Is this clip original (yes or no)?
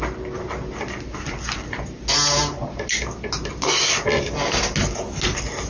yes